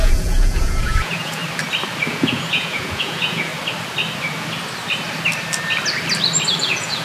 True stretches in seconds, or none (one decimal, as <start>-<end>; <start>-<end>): 1.4-2.1; 3.5-6.6